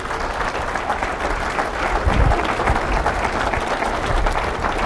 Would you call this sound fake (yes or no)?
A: no